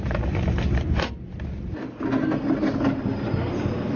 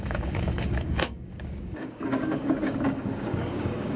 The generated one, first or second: second